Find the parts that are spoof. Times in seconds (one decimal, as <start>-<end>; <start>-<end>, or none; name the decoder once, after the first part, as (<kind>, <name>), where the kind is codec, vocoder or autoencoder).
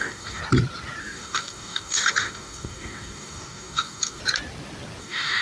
0.0-0.4 (codec, DAC); 1.0-4.2; 5.0-5.4